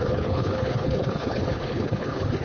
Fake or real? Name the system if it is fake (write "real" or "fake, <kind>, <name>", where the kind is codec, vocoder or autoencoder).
fake, codec, HILCodec